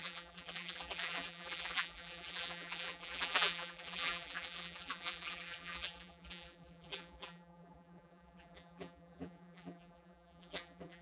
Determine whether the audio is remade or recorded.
remade